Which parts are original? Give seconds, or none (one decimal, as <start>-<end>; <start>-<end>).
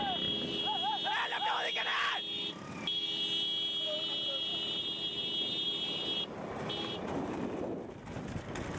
0.0-8.8